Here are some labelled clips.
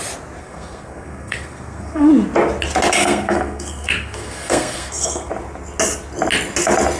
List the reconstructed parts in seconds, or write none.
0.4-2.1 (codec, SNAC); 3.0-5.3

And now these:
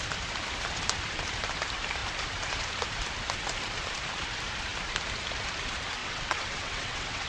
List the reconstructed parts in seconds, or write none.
6.0-7.3 (vocoder, WaveNeXt)